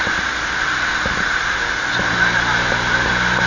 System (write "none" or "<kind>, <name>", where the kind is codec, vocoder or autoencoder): none